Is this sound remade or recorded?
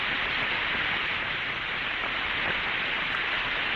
recorded